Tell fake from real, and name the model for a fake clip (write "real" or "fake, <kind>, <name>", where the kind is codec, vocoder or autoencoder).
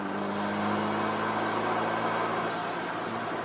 real